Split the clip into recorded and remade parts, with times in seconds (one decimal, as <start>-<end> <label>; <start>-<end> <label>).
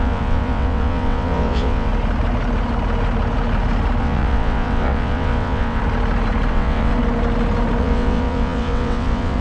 0.0-1.9 remade; 1.9-4.0 recorded; 4.0-5.8 remade; 5.8-6.5 recorded; 6.5-6.9 remade; 6.9-7.8 recorded; 7.8-9.4 remade